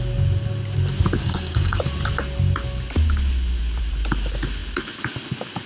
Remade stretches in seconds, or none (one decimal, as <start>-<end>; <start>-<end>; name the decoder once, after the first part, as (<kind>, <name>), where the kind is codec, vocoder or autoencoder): 1.2-1.8 (codec, DAC)

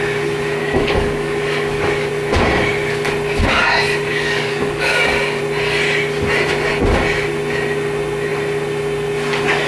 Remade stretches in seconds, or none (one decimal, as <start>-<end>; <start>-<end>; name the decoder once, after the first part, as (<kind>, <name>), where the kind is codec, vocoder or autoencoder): 0.6-2.1 (codec, DAC); 4.1-5.4

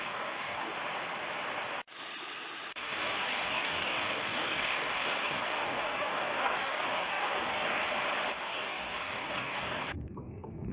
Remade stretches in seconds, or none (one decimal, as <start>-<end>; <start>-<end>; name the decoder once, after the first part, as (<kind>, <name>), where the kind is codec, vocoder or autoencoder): 0.0-0.7 (codec, DAC); 2.7-7.8; 8.4-10.7

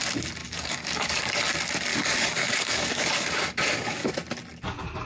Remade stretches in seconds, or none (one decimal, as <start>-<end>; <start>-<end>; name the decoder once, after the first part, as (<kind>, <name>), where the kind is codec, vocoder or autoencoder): 0.4-1.4 (codec, DAC); 1.9-4.1